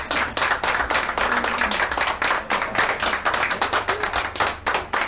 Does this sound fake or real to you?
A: real